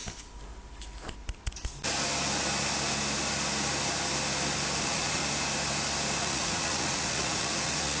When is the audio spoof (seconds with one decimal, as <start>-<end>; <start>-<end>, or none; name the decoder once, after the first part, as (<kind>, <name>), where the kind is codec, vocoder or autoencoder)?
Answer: 4.8-5.2 (vocoder, Vocos); 6.2-8.0